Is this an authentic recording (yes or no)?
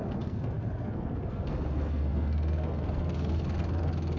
no